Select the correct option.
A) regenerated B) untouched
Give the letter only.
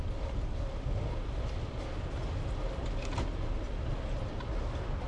B